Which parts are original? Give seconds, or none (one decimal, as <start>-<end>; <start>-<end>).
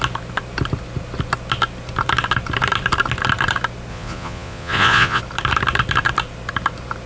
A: 0.0-3.9; 5.2-7.1